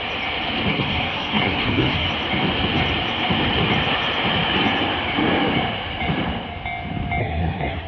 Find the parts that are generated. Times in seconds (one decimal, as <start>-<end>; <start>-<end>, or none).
0.7-2.1; 7.2-7.9